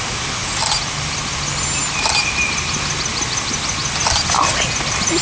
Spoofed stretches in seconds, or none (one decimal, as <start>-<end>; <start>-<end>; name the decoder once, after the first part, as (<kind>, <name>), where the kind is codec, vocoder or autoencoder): none